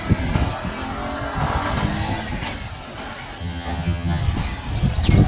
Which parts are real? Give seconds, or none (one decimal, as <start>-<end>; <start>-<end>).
0.0-3.4; 4.2-5.3